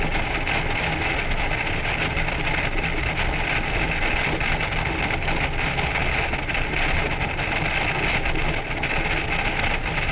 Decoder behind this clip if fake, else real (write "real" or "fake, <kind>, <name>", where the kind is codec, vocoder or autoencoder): real